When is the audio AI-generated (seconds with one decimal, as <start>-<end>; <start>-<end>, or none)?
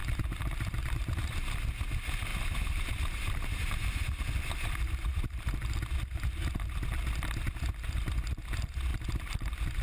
0.0-1.5; 2.3-4.2; 5.1-6.5; 8.9-9.8